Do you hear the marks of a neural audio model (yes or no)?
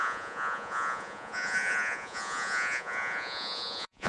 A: yes